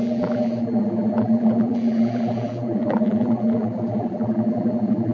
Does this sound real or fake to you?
fake